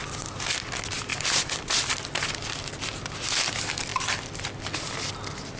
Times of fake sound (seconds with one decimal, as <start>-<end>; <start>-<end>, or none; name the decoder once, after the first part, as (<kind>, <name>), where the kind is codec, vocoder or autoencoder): 0.0-0.5 (vocoder, BigVGAN v2); 1.1-2.7; 3.9-4.4